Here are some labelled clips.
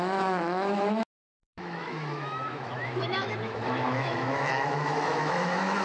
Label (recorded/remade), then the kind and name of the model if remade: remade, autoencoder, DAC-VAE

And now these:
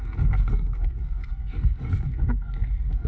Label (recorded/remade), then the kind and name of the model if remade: remade, codec, SNAC